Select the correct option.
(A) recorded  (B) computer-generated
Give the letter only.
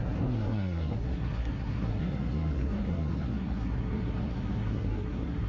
B